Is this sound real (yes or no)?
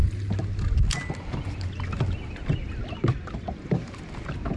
yes